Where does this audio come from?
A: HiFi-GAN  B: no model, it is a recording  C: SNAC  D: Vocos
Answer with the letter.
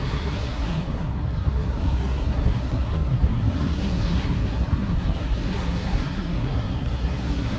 C